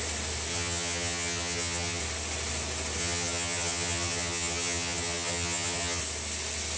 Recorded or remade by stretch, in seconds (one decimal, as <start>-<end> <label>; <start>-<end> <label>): 0.0-0.5 recorded; 0.5-2.0 remade; 2.0-3.0 recorded; 3.0-6.0 remade; 6.0-6.8 recorded